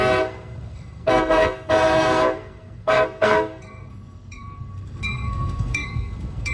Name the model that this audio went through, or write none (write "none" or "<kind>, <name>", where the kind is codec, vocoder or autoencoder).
codec, SNAC